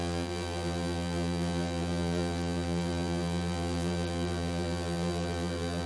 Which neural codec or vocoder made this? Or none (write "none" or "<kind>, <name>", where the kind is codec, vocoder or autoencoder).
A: vocoder, BigVGAN v2